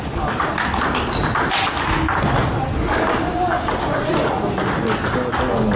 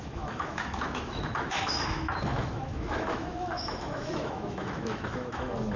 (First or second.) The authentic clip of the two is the first